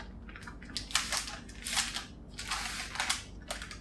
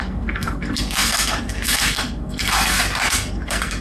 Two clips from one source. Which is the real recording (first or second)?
first